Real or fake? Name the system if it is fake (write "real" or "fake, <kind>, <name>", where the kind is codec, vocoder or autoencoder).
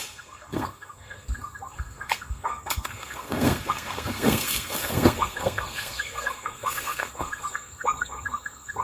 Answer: fake, codec, SNAC